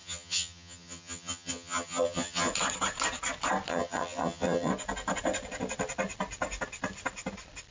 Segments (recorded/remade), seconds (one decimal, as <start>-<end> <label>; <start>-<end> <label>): 0.0-2.5 remade; 2.5-3.7 recorded; 3.7-4.7 remade; 4.7-7.7 recorded